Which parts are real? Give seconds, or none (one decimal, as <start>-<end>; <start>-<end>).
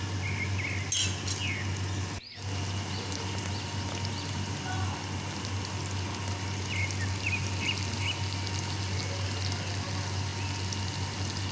0.0-11.5